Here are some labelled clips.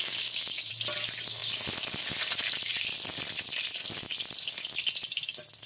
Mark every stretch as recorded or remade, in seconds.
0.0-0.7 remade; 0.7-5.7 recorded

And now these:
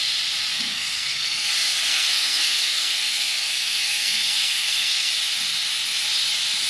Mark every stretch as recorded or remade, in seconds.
0.0-0.5 recorded; 0.5-1.5 remade; 1.5-1.9 recorded; 1.9-5.1 remade; 5.1-6.7 recorded

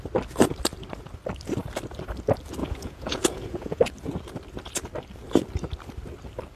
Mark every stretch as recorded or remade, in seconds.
0.0-2.6 recorded; 2.6-3.8 remade; 3.8-6.6 recorded

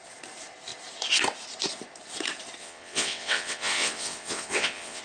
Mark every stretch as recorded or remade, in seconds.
0.0-2.6 recorded; 2.6-5.0 remade

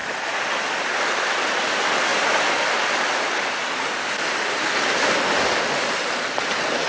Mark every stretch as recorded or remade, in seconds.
0.0-6.9 recorded

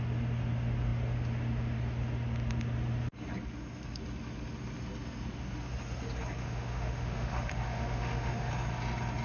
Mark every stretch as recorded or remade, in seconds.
0.0-6.4 recorded; 6.4-8.5 remade; 8.5-9.2 recorded

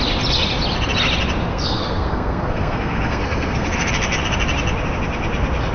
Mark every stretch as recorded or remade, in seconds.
0.0-1.5 recorded; 1.5-3.9 remade; 3.9-5.7 recorded